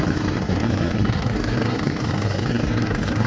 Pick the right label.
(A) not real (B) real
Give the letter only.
A